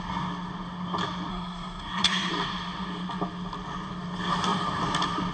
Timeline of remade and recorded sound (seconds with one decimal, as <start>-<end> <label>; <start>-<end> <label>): 0.0-1.3 recorded; 1.3-2.3 remade; 2.3-5.3 recorded